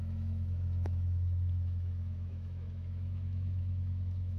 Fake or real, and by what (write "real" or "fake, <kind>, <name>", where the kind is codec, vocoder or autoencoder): fake, autoencoder, DAC-VAE